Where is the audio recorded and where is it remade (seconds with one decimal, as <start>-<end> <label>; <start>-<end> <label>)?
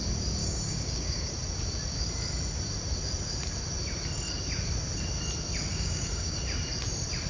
0.0-0.4 recorded; 0.4-1.3 remade; 1.3-5.7 recorded; 5.7-6.4 remade; 6.4-7.3 recorded